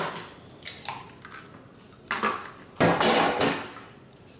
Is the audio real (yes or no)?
yes